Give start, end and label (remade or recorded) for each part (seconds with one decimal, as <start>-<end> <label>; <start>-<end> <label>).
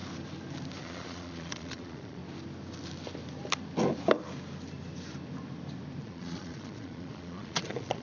0.0-0.8 recorded; 0.8-2.2 remade; 2.2-6.0 recorded; 6.0-8.0 remade